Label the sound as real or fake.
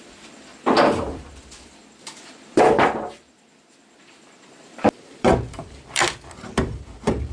fake